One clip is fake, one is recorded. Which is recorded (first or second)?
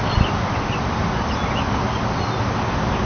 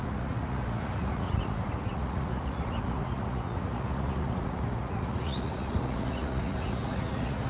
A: first